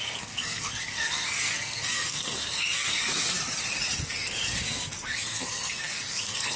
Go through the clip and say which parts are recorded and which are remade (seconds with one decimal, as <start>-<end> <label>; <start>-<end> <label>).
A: 0.0-3.4 remade; 3.4-4.0 recorded; 4.0-6.6 remade